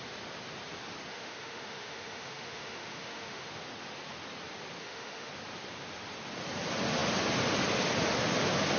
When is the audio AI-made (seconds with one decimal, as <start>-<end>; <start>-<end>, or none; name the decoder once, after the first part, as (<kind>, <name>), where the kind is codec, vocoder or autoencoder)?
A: 1.1-3.5 (autoencoder, DAC-VAE); 4.8-5.3

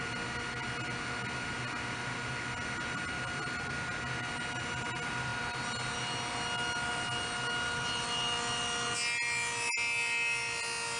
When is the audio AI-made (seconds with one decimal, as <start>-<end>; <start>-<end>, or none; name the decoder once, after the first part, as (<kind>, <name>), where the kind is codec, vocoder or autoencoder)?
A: none

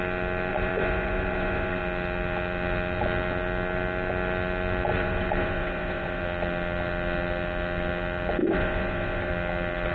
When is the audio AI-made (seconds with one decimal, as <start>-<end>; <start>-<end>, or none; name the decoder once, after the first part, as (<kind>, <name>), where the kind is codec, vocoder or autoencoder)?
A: 0.5-1.8 (vocoder, Vocos); 4.9-6.2; 8.4-9.3

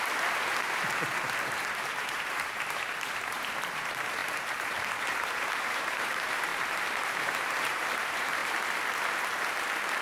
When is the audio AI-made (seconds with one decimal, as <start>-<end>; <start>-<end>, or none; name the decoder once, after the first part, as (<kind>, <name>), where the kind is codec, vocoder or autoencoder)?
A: 0.0-6.5 (vocoder, BigVGAN v2); 7.0-8.4

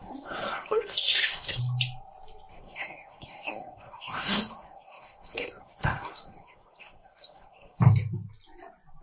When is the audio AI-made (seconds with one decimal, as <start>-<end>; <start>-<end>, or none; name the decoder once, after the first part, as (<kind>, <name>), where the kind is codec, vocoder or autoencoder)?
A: 0.0-1.6 (codec, SNAC); 2.5-7.8

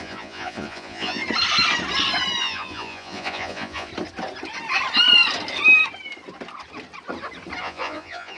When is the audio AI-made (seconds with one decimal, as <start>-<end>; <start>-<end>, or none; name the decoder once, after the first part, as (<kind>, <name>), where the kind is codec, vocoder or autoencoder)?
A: 0.0-1.2 (vocoder, Vocos); 2.4-3.9; 7.6-8.4